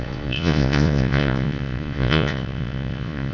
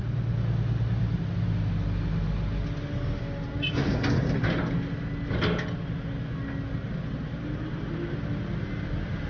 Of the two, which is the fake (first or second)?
first